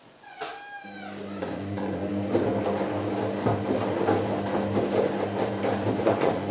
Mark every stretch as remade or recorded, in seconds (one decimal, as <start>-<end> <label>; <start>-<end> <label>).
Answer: 0.0-0.5 remade; 0.5-1.4 recorded; 1.4-2.1 remade; 2.1-6.0 recorded; 6.0-6.5 remade